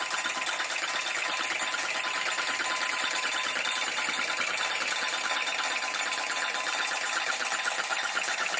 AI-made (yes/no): no